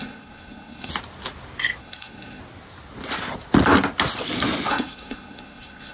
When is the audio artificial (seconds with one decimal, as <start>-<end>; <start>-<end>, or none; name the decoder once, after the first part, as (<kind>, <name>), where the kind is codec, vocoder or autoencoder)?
0.0-0.9 (codec, SNAC); 1.8-2.4; 4.7-5.9